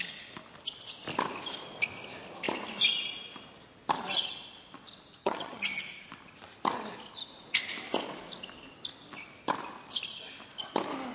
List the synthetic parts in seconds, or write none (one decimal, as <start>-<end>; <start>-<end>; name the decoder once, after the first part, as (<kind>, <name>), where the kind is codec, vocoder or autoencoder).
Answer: 5.2-5.8 (vocoder, HiFi-GAN)